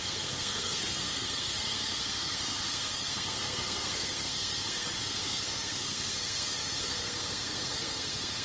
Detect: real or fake fake